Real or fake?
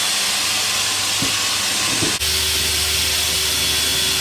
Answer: real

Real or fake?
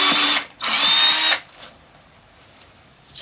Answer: real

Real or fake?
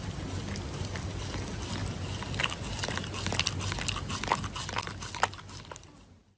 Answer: real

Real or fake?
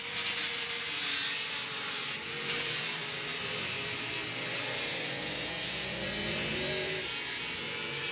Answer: fake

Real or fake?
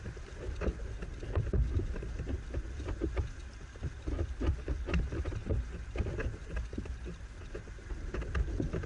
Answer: real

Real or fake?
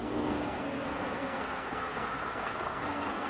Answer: fake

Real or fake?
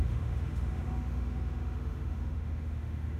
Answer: fake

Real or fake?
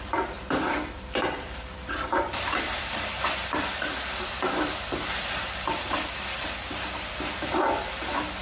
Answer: fake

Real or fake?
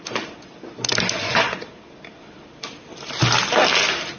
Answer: real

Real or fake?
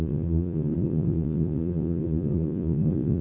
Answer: fake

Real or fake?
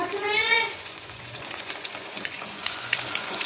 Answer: fake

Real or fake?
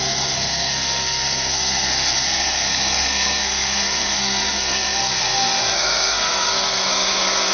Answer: fake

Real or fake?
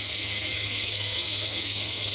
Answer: fake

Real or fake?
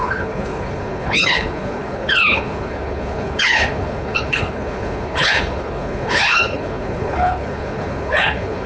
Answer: fake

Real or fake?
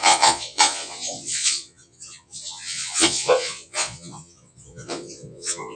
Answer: fake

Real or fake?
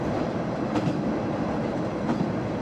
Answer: fake